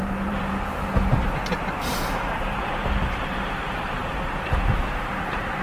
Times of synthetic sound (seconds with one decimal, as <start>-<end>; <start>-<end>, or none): 0.0-4.0; 4.5-5.6